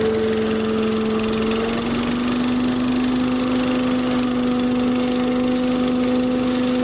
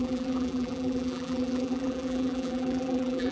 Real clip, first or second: first